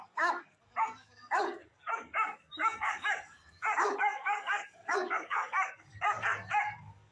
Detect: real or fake fake